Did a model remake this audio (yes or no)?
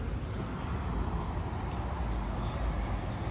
no